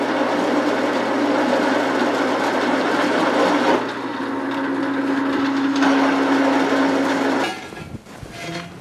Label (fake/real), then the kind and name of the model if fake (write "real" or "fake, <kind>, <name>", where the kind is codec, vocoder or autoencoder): real